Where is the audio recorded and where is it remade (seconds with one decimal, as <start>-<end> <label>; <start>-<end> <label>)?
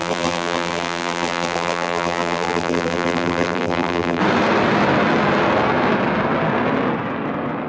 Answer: 0.0-4.2 remade; 4.2-7.7 recorded